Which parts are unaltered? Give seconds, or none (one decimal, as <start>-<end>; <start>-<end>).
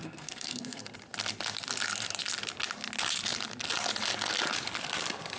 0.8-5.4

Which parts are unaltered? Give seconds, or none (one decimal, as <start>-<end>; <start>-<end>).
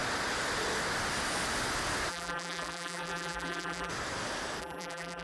0.0-2.1; 3.9-4.6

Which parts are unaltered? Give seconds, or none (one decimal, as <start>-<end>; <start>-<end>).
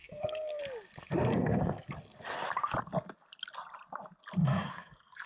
0.6-1.3; 1.9-4.4